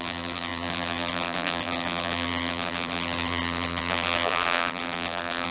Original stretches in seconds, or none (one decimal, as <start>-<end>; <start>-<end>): none

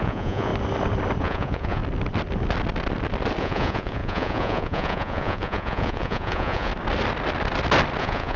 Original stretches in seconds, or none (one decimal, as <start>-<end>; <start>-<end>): 0.5-1.2; 1.8-3.4; 6.7-8.0

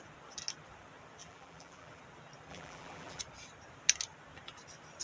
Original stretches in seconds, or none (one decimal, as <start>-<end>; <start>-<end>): 0.0-1.2; 2.0-2.5; 3.2-5.0

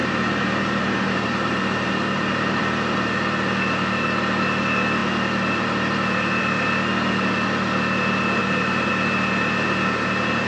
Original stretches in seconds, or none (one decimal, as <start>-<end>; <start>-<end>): 2.6-8.4; 8.9-10.5

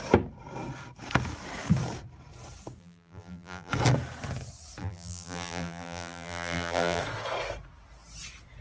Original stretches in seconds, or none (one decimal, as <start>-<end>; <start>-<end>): 0.0-2.8; 3.7-4.8; 7.0-8.6

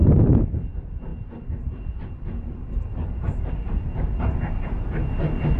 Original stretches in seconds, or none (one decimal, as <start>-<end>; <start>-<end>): 0.0-1.1; 4.2-5.6

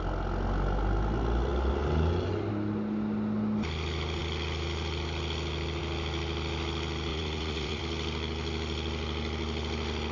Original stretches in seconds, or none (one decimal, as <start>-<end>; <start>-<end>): 0.0-7.1; 7.8-10.1

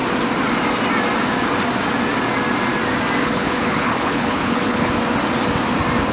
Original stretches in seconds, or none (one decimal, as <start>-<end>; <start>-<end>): 0.0-3.2; 4.9-6.1